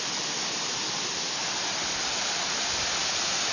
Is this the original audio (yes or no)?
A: yes